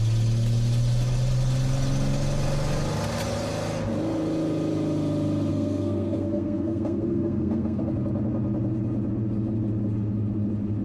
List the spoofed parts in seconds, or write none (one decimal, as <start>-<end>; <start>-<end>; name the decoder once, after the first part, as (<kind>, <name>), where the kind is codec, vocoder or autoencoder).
5.5-7.9 (codec, SNAC)